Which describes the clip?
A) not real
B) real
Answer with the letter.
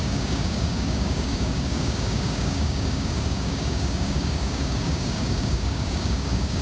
A